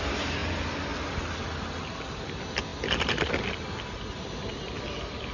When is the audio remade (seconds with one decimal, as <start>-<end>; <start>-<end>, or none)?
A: none